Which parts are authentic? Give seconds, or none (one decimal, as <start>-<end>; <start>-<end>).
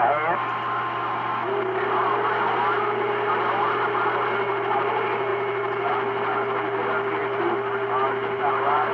0.0-8.9